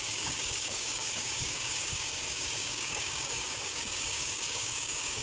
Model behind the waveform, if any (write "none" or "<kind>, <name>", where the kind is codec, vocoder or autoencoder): codec, DAC